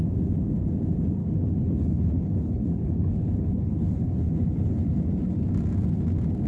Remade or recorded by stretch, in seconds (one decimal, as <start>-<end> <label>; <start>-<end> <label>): 0.0-1.2 recorded; 1.2-5.1 remade; 5.1-6.5 recorded